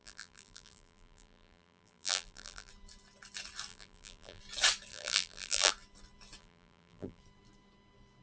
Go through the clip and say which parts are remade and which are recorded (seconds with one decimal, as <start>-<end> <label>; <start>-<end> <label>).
0.0-2.7 remade; 2.7-3.7 recorded; 3.7-4.4 remade; 4.4-4.9 recorded; 4.9-5.7 remade; 5.7-6.4 recorded; 6.4-7.2 remade; 7.2-8.2 recorded